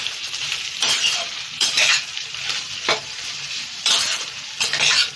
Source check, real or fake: fake